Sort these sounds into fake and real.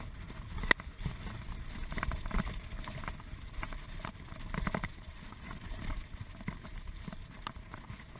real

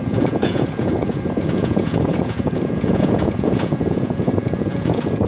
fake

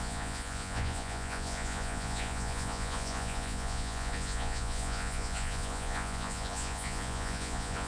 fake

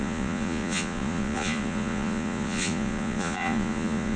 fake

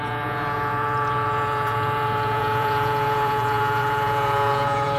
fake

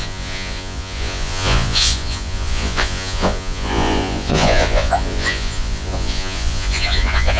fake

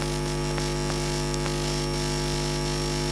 real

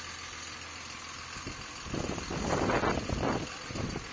real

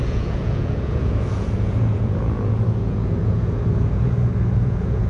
fake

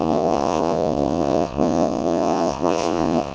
fake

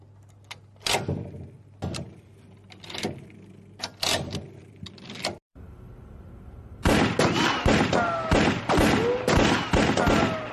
real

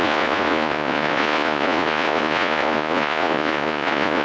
fake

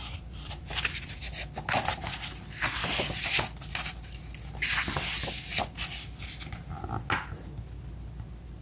real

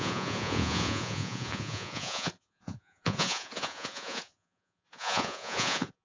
fake